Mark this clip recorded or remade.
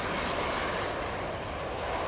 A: remade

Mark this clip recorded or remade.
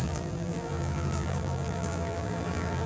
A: remade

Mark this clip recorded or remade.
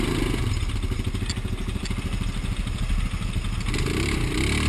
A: recorded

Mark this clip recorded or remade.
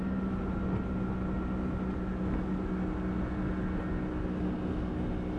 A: recorded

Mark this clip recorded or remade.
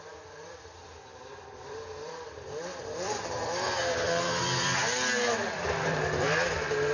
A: remade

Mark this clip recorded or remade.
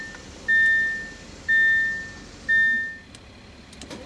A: recorded